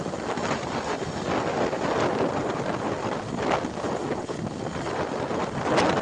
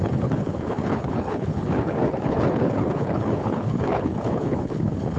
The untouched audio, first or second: first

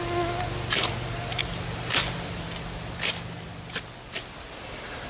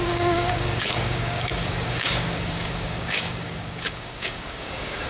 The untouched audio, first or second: first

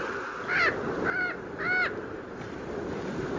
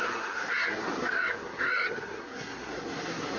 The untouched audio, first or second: first